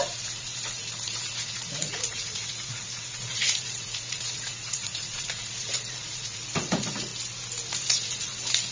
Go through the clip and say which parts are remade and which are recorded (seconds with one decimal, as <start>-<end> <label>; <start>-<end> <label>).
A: 0.0-7.1 remade; 7.1-7.7 recorded; 7.7-8.7 remade